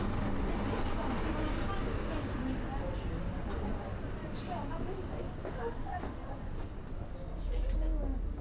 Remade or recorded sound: recorded